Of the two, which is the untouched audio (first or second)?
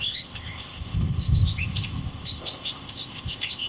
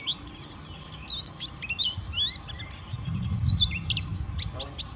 second